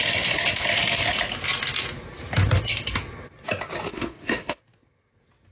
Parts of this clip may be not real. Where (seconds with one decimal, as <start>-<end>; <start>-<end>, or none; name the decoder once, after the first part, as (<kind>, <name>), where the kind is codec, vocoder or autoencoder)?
3.9-4.6 (autoencoder, DAC-VAE)